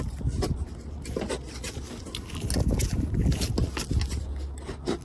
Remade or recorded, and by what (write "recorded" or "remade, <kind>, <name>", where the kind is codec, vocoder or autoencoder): recorded